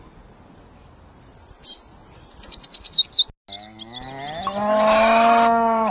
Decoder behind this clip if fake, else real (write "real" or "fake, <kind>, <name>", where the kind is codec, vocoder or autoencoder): real